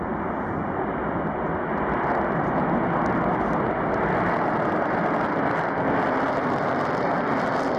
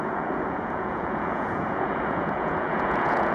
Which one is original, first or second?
first